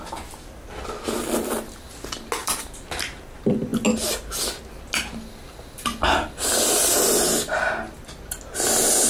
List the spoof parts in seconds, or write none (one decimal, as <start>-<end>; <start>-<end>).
2.4-3.3